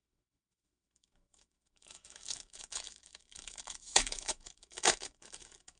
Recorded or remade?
remade